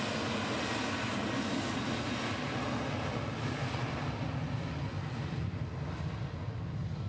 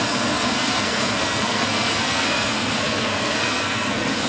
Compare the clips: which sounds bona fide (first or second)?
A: first